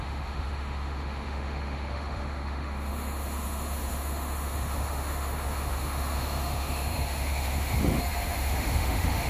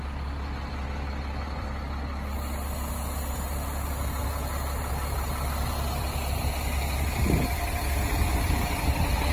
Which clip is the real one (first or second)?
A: second